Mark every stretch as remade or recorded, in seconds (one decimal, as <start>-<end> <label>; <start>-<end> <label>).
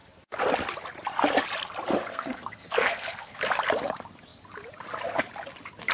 0.0-2.1 recorded; 2.1-3.4 remade; 3.4-5.9 recorded